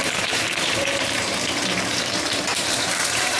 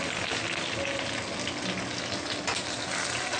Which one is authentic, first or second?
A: second